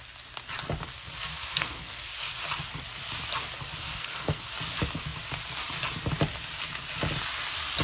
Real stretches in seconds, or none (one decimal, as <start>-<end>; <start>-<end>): 0.0-0.9; 2.4-3.8; 4.5-7.8